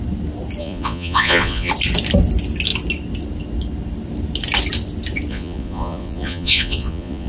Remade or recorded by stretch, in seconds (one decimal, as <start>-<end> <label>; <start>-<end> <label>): 0.0-0.6 recorded; 0.6-1.7 remade; 1.7-5.3 recorded; 5.3-7.3 remade